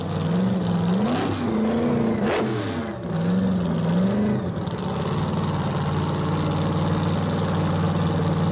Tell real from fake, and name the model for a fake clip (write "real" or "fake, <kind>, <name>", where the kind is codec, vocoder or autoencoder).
real